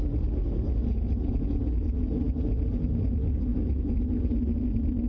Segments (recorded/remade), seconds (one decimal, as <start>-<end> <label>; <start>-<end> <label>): 0.0-3.5 recorded; 3.5-4.0 remade; 4.0-5.1 recorded